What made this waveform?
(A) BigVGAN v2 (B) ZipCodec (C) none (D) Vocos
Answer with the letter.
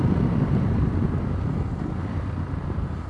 A